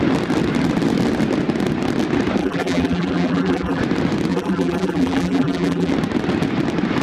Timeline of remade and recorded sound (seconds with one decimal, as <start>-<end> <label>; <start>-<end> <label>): 0.0-2.4 recorded; 2.4-3.8 remade; 3.8-4.3 recorded; 4.3-5.9 remade; 5.9-7.0 recorded